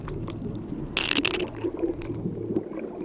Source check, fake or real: real